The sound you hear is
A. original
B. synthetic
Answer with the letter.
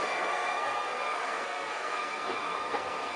B